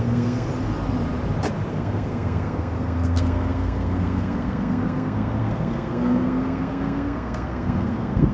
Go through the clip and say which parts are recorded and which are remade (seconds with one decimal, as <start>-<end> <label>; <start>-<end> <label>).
0.0-0.5 remade; 0.5-1.7 recorded; 1.7-8.3 remade

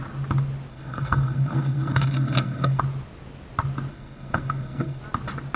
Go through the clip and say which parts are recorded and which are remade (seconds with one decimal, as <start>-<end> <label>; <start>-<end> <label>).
0.0-0.7 recorded; 0.7-2.8 remade; 2.8-3.9 recorded; 3.9-5.0 remade; 5.0-5.6 recorded

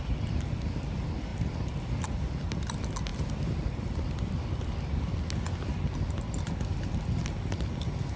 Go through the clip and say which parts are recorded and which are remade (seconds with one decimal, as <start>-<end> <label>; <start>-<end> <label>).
0.0-8.2 recorded

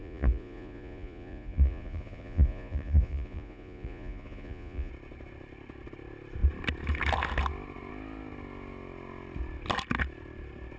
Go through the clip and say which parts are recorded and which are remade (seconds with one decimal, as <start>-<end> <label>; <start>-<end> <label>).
0.0-4.9 remade; 4.9-10.8 recorded

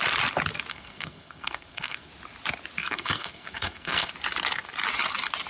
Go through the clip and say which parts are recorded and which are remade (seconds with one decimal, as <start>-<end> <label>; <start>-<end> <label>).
0.0-0.7 recorded; 0.7-2.1 remade; 2.1-2.8 recorded; 2.8-4.1 remade; 4.1-5.5 recorded

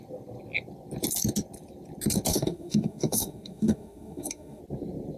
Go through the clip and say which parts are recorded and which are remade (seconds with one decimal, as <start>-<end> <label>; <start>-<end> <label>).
0.0-2.3 recorded; 2.3-4.6 remade; 4.6-5.2 recorded

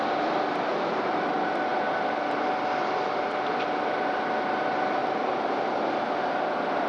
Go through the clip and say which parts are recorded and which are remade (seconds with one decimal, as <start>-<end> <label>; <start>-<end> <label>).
0.0-1.7 recorded; 1.7-3.9 remade; 3.9-5.0 recorded; 5.0-6.0 remade; 6.0-6.9 recorded

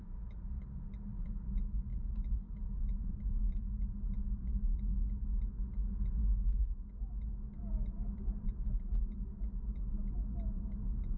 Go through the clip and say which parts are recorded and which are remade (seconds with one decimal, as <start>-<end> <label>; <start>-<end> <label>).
0.0-0.5 remade; 0.5-4.2 recorded; 4.2-5.0 remade; 5.0-6.2 recorded; 6.2-8.2 remade; 8.2-11.2 recorded